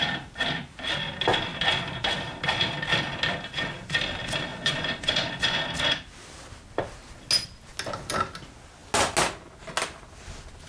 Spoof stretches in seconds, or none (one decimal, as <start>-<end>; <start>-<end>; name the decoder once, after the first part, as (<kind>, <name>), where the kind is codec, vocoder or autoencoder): 4.5-5.6 (vocoder, Vocos)

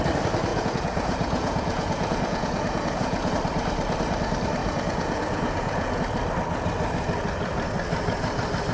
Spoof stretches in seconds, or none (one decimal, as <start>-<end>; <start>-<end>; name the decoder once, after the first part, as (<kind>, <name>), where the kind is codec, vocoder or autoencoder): 0.5-3.3 (vocoder, Vocos); 4.6-6.0

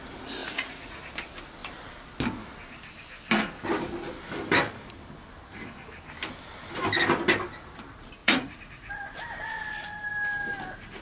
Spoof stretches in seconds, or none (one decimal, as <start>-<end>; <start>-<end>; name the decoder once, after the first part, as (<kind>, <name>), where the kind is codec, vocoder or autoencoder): 0.4-1.0 (vocoder, Vocos); 8.2-8.9

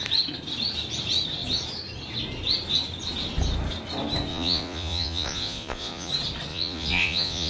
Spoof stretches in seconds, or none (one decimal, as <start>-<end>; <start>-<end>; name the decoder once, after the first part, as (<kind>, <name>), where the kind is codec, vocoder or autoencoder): 4.3-6.1 (vocoder, Vocos); 6.5-7.5

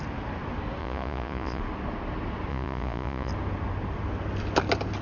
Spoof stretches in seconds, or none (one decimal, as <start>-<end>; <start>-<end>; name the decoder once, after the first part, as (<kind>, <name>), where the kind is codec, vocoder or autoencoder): 0.8-1.6 (vocoder, Vocos); 2.5-3.3